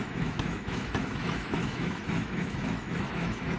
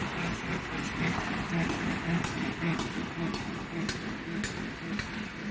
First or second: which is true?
second